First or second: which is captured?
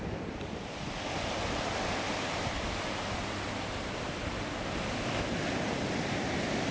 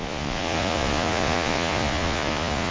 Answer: first